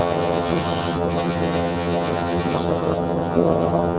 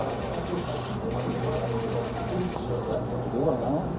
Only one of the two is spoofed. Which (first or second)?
first